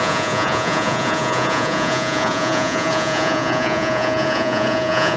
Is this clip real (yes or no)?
no